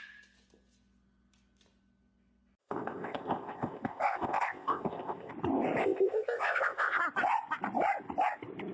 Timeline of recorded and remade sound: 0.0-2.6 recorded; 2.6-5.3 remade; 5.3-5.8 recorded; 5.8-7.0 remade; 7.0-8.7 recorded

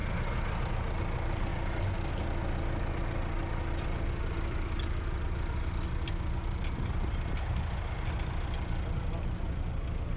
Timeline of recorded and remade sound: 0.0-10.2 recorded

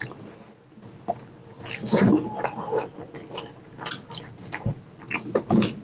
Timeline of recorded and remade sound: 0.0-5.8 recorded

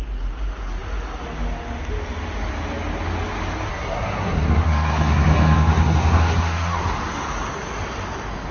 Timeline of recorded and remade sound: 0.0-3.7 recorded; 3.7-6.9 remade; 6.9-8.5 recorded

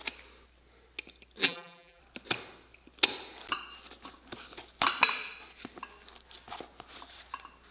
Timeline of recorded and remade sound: 0.0-1.4 recorded; 1.4-2.0 remade; 2.0-7.7 recorded

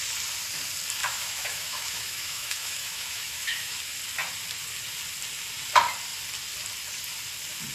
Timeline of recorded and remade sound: 0.0-1.0 recorded; 1.0-3.8 remade; 3.8-7.7 recorded